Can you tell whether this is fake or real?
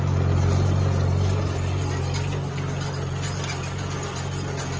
real